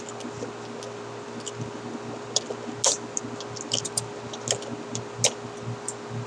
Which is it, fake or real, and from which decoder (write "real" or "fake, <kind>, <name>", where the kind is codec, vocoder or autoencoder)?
real